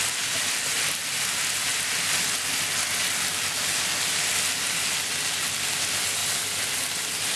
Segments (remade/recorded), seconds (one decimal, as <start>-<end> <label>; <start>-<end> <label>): 0.0-7.4 recorded